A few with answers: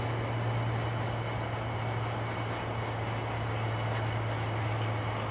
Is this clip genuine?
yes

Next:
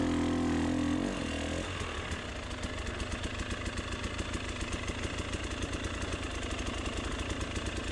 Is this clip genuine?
yes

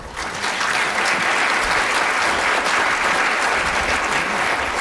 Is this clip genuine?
yes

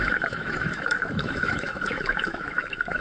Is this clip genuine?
no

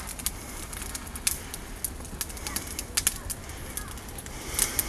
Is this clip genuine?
yes